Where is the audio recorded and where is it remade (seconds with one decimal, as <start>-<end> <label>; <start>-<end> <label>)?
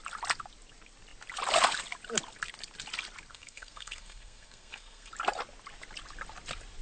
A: 0.0-3.3 recorded; 3.3-5.1 remade; 5.1-6.8 recorded